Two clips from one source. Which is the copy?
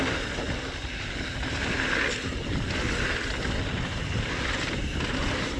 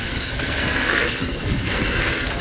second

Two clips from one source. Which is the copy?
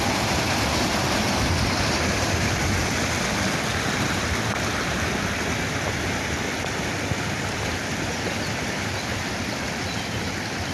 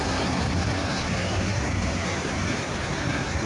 second